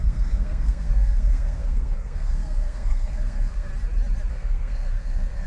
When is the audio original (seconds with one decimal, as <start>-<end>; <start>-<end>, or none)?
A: 3.7-4.3